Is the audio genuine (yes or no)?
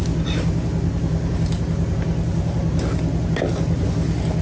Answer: yes